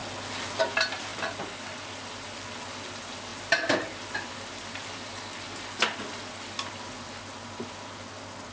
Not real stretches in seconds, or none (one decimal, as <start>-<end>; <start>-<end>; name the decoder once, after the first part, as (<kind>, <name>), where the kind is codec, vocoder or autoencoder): none